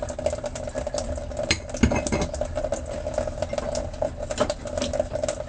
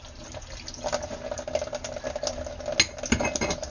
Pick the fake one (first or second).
first